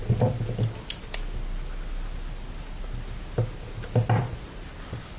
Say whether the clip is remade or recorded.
recorded